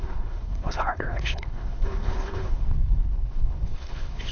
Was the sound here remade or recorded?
remade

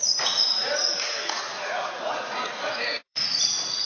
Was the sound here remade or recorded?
remade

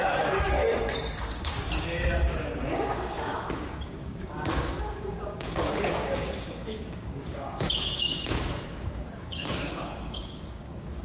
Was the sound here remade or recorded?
remade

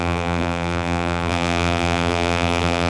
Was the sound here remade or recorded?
remade